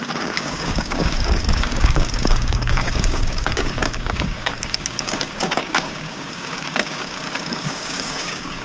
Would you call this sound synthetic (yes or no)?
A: yes